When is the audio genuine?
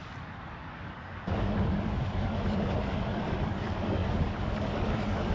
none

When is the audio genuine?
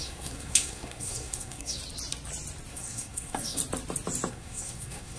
1.8-2.7; 3.6-4.3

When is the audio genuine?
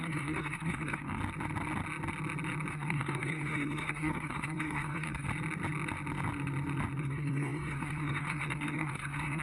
1.2-2.7; 5.3-7.0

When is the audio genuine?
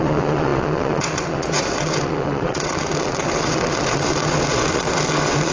none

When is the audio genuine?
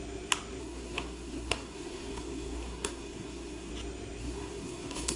0.0-0.6; 3.7-4.2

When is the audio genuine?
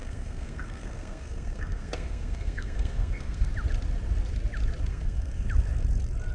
3.5-4.9; 5.5-6.3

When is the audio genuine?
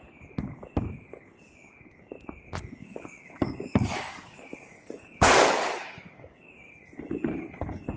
0.0-2.8; 6.8-8.0